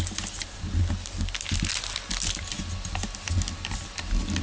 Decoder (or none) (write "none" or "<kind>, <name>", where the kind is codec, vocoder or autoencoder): none